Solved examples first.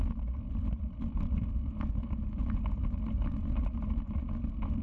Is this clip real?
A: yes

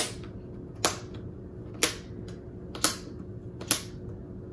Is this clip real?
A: yes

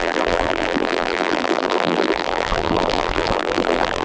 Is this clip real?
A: no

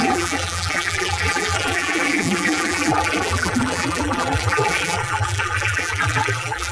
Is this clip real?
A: no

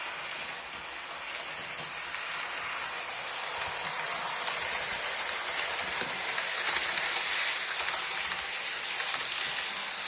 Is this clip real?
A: yes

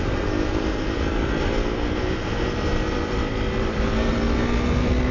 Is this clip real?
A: yes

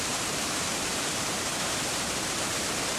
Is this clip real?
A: no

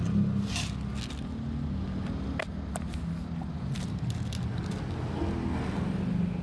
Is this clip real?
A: yes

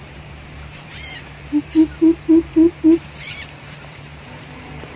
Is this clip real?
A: no